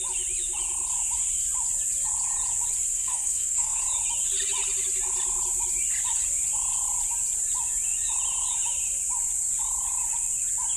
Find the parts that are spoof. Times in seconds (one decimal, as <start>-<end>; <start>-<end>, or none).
2.9-3.8